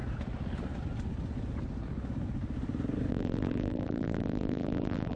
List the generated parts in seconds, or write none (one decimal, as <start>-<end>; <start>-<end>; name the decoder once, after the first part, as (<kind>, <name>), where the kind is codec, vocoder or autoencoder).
3.1-5.2 (vocoder, BigVGAN v2)